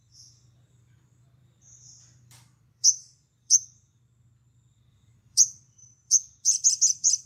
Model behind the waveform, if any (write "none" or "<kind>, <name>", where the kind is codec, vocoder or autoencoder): vocoder, BigVGAN v2